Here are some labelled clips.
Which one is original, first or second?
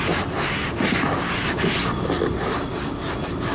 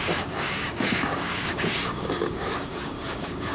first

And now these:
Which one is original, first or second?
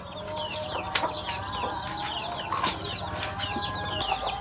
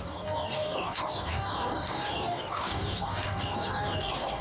first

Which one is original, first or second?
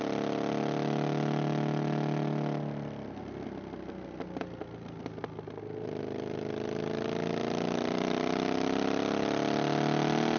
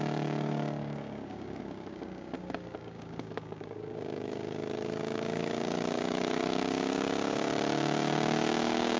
first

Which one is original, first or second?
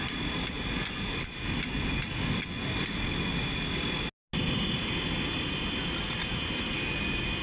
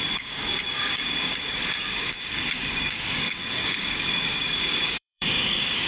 first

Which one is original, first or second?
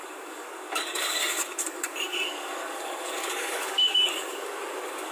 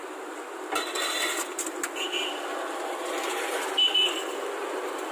second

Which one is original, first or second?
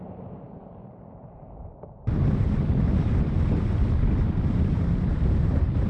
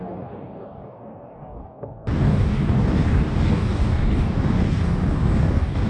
first